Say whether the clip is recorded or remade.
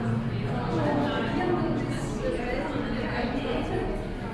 recorded